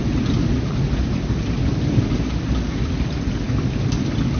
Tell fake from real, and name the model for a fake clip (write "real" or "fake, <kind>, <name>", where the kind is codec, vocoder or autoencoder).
real